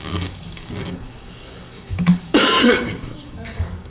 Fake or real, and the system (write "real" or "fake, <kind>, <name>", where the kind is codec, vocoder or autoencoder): fake, codec, DAC